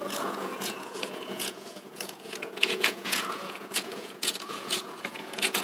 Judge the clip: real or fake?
fake